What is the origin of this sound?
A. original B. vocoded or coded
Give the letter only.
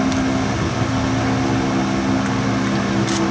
A